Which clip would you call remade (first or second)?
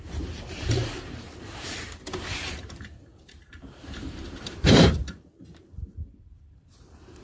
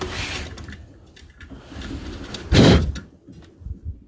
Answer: first